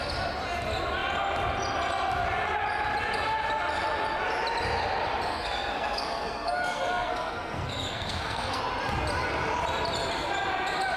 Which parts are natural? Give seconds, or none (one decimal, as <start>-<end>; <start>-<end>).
0.0-5.3; 8.6-11.0